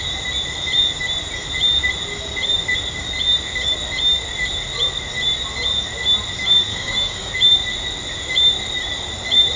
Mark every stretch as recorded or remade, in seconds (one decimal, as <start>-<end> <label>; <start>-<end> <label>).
0.0-6.7 recorded; 6.7-7.3 remade; 7.3-9.6 recorded